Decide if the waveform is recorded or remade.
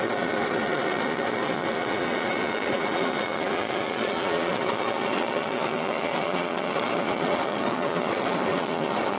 remade